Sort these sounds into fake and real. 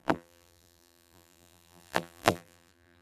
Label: fake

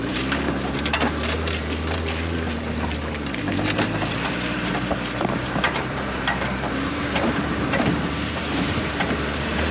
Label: fake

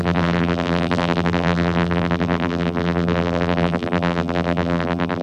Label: fake